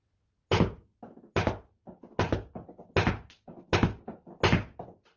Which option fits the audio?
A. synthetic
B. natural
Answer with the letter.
B